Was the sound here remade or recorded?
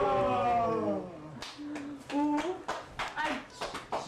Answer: recorded